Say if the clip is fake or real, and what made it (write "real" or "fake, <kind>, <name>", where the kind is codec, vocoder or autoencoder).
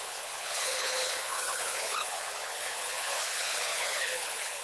fake, codec, HILCodec